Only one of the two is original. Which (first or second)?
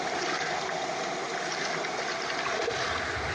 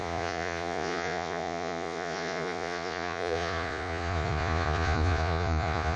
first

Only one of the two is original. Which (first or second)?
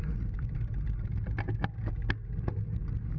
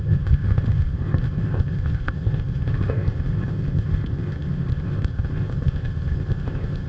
first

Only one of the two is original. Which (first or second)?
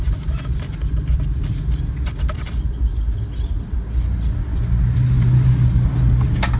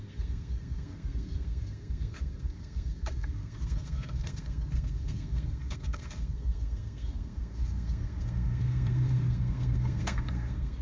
first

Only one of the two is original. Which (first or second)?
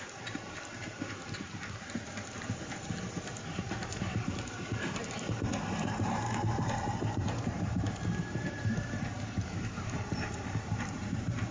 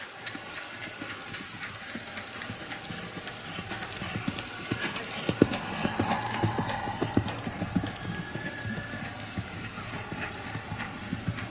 second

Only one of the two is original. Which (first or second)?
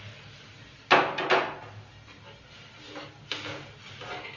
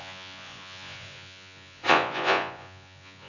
first